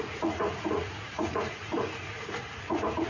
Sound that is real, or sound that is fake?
fake